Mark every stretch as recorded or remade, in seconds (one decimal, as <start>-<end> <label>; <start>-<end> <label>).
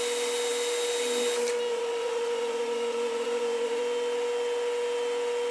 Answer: 0.0-1.7 recorded; 1.7-3.8 remade; 3.8-5.5 recorded